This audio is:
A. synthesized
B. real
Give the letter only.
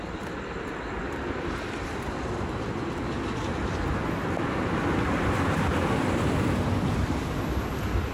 B